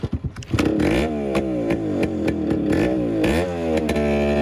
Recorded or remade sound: recorded